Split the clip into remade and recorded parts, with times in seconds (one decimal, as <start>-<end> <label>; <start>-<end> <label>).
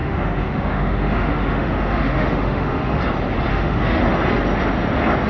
0.0-3.0 remade; 3.0-3.5 recorded; 3.5-4.0 remade; 4.0-5.3 recorded